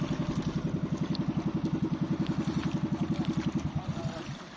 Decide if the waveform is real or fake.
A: real